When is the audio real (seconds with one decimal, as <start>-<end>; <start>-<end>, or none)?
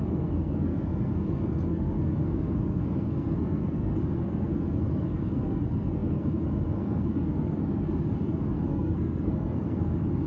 none